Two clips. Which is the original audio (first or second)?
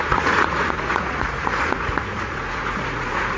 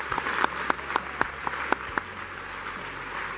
second